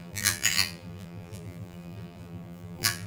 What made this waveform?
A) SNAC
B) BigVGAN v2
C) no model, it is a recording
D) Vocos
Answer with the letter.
B